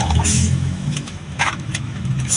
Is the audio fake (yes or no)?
yes